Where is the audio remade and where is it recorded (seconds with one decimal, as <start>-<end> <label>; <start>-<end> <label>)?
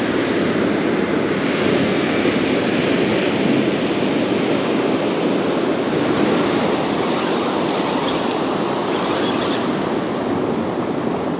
0.0-1.8 recorded; 1.8-2.3 remade; 2.3-11.4 recorded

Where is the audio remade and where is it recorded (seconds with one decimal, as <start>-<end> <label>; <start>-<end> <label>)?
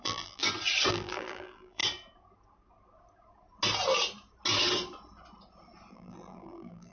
0.0-0.4 remade; 0.4-0.9 recorded; 0.9-1.8 remade; 1.8-5.9 recorded; 5.9-6.9 remade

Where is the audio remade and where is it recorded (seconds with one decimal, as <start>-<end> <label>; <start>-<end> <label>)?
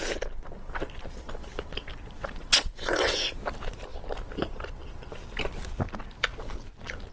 0.0-2.4 recorded; 2.4-3.3 remade; 3.3-7.1 recorded